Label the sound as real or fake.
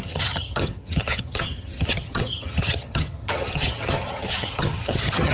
fake